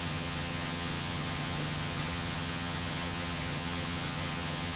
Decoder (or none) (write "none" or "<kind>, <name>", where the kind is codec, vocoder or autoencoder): vocoder, HiFi-GAN